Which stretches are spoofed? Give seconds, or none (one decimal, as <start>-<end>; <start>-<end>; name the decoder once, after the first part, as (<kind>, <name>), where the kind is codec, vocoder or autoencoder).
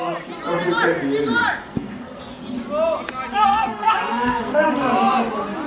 1.6-2.2 (codec, SNAC); 3.3-5.1